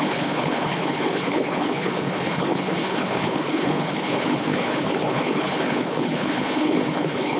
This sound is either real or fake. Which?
fake